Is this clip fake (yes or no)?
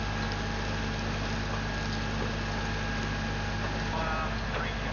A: no